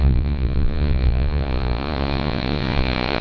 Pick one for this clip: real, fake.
fake